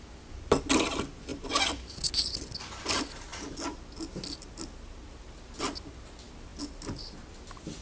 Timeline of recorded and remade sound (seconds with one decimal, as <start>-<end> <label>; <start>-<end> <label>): 0.0-7.8 recorded